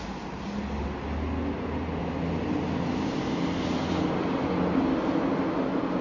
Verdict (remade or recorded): recorded